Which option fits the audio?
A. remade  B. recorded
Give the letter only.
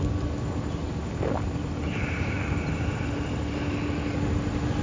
B